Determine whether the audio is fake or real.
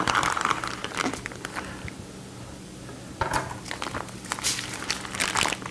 real